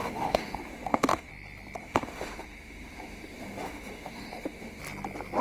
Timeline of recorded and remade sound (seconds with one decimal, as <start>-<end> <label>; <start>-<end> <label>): 0.0-1.3 remade; 1.3-1.8 recorded; 1.8-4.8 remade; 4.8-5.4 recorded